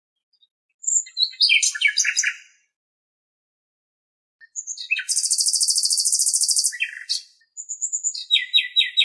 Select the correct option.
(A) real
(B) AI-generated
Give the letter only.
A